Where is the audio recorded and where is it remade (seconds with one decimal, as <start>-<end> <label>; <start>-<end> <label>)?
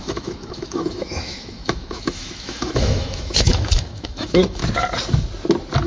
0.0-4.6 remade; 4.6-5.9 recorded